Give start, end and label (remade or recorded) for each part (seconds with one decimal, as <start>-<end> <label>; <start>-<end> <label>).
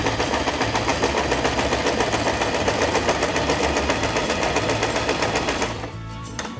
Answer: 0.0-6.6 remade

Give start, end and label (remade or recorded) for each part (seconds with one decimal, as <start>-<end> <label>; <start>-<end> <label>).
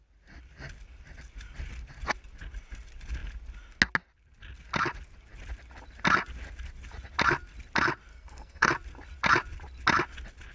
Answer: 0.0-8.1 recorded; 8.1-8.7 remade; 8.7-10.5 recorded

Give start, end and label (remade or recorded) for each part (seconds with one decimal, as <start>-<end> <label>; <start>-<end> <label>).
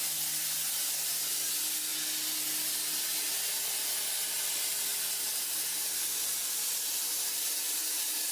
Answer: 0.0-8.3 recorded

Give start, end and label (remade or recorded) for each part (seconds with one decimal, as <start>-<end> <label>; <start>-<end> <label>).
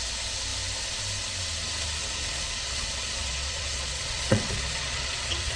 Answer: 0.0-2.0 recorded; 2.0-5.6 remade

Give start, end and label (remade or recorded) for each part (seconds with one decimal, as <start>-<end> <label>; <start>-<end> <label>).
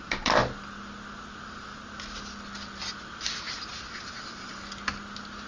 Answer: 0.0-5.5 recorded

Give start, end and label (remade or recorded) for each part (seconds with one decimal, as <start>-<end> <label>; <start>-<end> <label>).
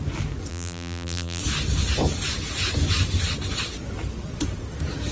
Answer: 0.0-0.5 recorded; 0.5-1.4 remade; 1.4-5.1 recorded